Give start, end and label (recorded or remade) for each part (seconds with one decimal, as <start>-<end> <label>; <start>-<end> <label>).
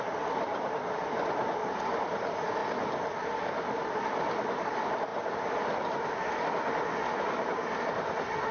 0.0-2.6 remade; 2.6-4.0 recorded; 4.0-5.1 remade; 5.1-7.7 recorded; 7.7-8.5 remade